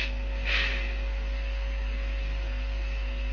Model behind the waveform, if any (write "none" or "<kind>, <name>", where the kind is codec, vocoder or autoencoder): codec, SNAC